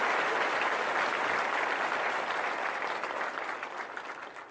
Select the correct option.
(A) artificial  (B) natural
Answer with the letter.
B